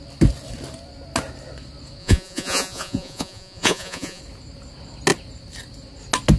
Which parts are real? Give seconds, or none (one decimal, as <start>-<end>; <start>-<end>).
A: 0.0-2.0; 4.2-6.4